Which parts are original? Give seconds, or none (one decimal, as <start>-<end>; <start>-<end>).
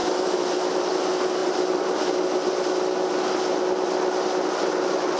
0.9-1.4; 2.0-5.2